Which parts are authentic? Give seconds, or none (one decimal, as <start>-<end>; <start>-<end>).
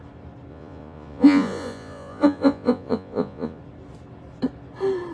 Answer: 0.0-0.5; 3.6-5.1